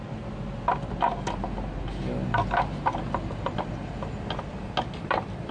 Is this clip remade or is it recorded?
recorded